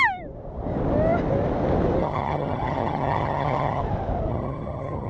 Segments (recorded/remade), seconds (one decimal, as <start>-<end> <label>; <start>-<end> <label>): 0.0-2.0 recorded; 2.0-3.8 remade; 3.8-4.3 recorded; 4.3-5.1 remade